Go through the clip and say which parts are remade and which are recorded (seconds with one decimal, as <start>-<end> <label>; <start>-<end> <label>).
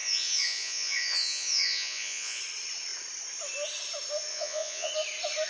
0.0-2.4 remade; 2.4-4.3 recorded; 4.3-4.9 remade; 4.9-5.5 recorded